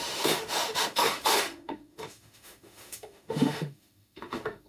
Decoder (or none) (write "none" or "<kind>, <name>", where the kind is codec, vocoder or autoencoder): autoencoder, DAC-VAE